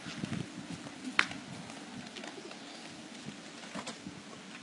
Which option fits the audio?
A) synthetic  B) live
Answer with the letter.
B